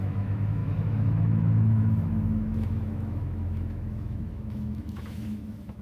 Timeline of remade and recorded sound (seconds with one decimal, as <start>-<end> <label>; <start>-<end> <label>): 0.0-5.8 remade